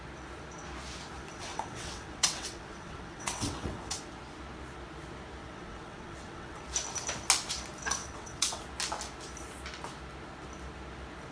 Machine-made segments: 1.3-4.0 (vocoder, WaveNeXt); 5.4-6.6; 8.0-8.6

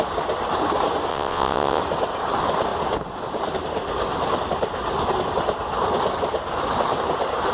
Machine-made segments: 1.1-1.8 (vocoder, WaveNeXt)

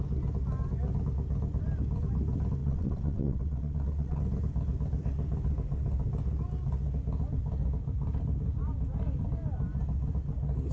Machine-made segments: 2.6-4.2 (vocoder, WaveNeXt)

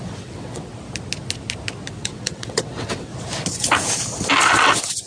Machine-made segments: 0.0-0.7 (vocoder, WaveNeXt); 1.9-3.1

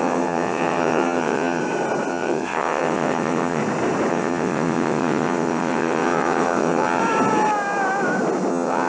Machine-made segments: 0.0-1.6 (vocoder, WaveNeXt); 2.1-3.6; 4.1-7.0; 8.5-8.9